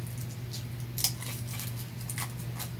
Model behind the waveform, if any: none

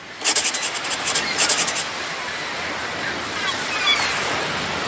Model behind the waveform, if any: none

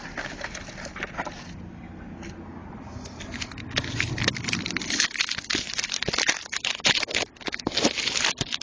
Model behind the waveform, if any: none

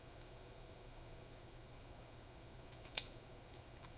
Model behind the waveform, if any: autoencoder, DAC-VAE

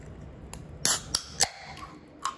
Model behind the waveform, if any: none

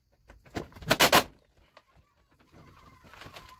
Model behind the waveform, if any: none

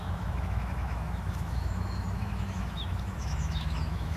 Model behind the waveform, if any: autoencoder, DAC-VAE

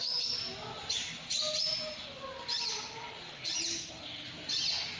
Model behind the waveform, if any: none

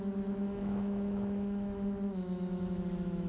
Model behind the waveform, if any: autoencoder, DAC-VAE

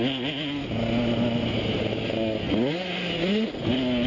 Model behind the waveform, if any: none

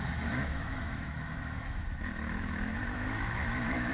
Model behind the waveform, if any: autoencoder, DAC-VAE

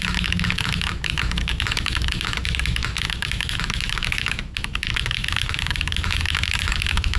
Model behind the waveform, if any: autoencoder, DAC-VAE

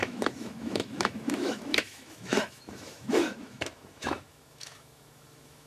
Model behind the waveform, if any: autoencoder, DAC-VAE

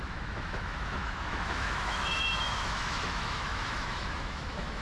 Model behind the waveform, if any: autoencoder, DAC-VAE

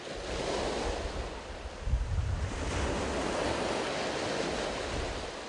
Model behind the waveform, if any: none